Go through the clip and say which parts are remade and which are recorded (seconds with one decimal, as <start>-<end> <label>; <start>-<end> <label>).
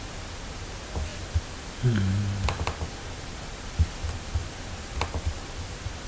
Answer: 0.0-6.1 recorded